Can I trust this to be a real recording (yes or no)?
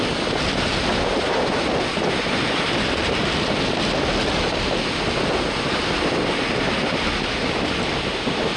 yes